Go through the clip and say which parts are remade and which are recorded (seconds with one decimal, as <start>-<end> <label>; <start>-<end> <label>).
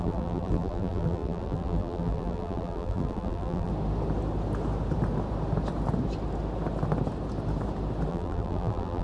0.0-3.7 remade; 3.7-8.1 recorded; 8.1-9.0 remade